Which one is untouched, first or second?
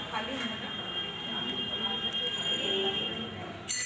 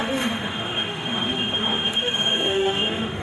first